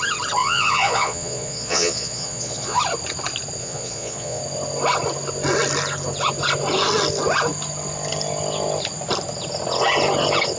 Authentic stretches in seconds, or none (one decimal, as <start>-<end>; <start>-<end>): 0.0-0.4; 2.8-3.6; 4.4-10.6